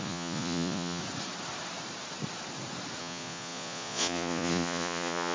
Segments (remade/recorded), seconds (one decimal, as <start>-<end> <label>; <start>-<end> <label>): 0.0-1.0 remade; 1.0-3.0 recorded; 3.0-5.3 remade